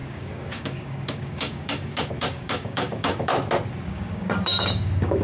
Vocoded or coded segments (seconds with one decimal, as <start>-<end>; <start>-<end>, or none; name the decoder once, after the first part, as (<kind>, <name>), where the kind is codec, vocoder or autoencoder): 0.0-3.3 (codec, DAC); 3.9-5.2

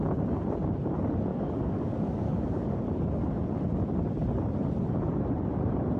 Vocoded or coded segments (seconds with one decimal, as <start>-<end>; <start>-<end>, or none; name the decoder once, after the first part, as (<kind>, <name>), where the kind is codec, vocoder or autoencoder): 1.3-2.8 (codec, DAC)